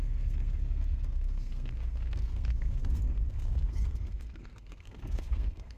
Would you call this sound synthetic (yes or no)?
yes